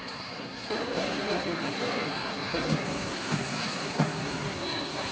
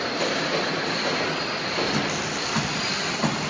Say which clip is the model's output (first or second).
first